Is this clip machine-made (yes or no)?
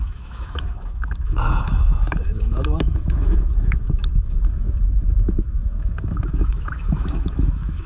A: yes